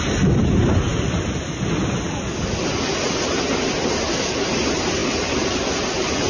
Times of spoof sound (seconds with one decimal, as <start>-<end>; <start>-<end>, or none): none